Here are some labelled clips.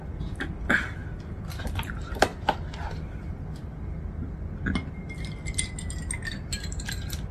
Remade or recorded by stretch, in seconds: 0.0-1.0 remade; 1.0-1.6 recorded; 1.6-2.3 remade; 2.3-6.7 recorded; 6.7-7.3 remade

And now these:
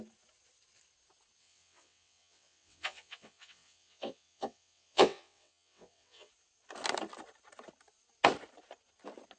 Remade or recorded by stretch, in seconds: 0.0-1.4 recorded; 1.4-6.3 remade; 6.3-9.4 recorded

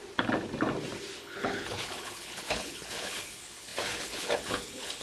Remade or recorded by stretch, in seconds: 0.0-1.2 recorded; 1.2-5.0 remade

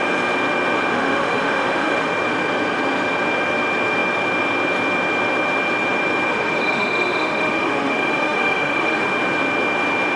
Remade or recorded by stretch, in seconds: 0.0-0.9 recorded; 0.9-2.1 remade; 2.1-6.3 recorded; 6.3-9.1 remade; 9.1-10.2 recorded